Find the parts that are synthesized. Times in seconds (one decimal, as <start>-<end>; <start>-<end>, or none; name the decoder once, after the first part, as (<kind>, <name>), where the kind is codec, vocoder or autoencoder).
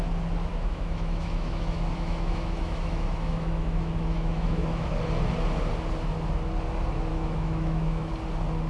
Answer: 0.5-4.9 (autoencoder, DAC-VAE); 7.1-8.1